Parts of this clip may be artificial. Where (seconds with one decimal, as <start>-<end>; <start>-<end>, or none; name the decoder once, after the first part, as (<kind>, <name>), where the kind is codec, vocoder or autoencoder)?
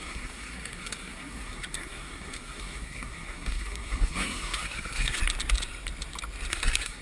0.0-5.2 (codec, SNAC); 6.5-7.0